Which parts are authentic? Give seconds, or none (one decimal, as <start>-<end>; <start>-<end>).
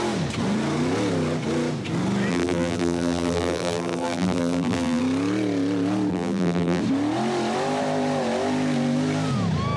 0.0-2.3; 5.0-6.1; 6.8-9.8